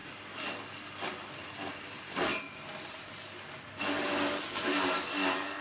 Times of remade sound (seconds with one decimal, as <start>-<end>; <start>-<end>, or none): none